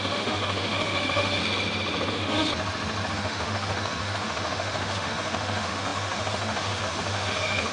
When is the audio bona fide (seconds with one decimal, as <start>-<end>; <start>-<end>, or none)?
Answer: 1.4-2.1; 2.5-3.1